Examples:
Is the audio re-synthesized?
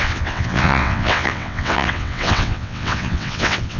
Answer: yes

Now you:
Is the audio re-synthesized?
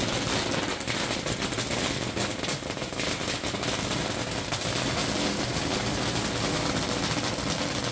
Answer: no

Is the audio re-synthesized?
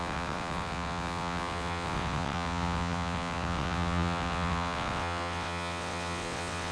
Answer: yes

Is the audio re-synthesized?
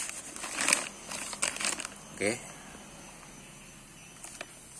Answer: no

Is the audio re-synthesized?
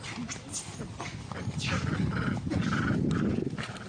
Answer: no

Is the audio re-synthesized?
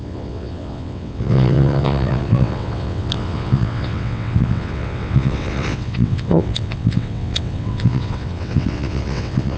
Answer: yes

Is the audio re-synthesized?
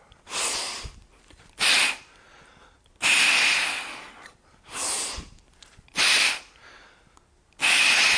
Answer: no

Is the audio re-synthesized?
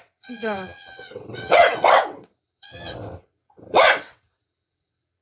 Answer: yes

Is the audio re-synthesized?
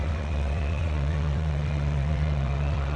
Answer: yes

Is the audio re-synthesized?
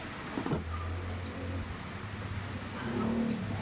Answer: no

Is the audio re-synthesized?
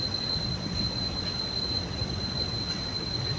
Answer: yes